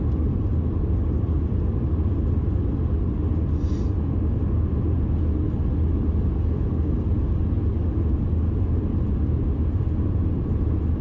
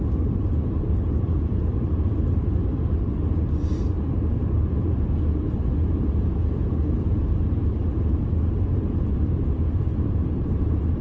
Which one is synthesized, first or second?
second